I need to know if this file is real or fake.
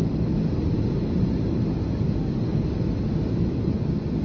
real